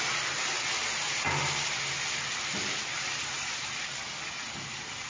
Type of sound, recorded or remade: recorded